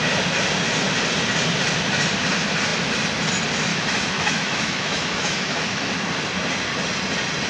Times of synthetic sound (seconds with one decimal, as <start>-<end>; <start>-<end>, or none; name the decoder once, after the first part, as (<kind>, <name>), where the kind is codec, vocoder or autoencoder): 3.7-5.9 (autoencoder, DAC-VAE)